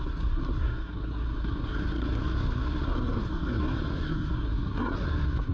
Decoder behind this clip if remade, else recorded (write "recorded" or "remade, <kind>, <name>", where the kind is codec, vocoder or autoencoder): remade, codec, SNAC